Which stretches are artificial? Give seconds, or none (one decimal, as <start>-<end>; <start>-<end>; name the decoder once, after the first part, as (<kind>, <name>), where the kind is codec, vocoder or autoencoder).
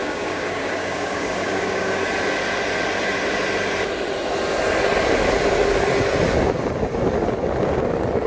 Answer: 0.0-2.0 (codec, DAC)